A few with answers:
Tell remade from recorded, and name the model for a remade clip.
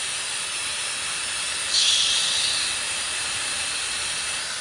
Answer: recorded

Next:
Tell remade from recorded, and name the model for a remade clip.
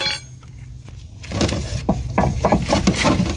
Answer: recorded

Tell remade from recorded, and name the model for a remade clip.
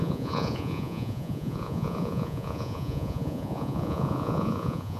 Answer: remade, vocoder, Vocos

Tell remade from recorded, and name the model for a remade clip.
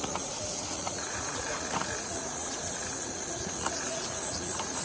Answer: remade, vocoder, Vocos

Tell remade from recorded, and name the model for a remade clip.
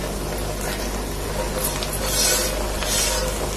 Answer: recorded